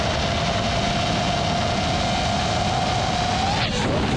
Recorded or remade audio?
recorded